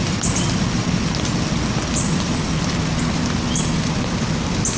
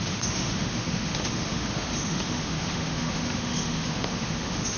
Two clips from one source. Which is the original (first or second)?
first